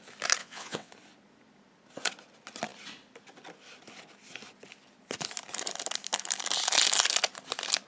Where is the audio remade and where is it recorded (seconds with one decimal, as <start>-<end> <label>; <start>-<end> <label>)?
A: 0.0-0.4 recorded; 0.4-0.9 remade; 0.9-7.9 recorded